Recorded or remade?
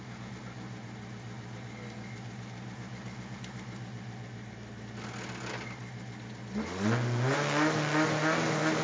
recorded